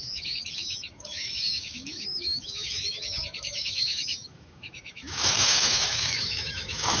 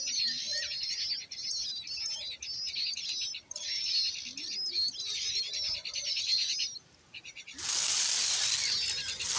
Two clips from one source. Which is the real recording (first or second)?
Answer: second